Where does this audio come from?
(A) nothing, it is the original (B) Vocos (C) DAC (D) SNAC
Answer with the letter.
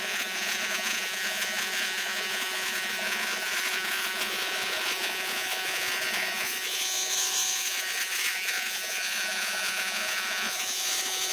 B